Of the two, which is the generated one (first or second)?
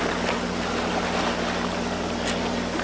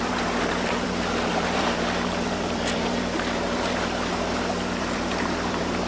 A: second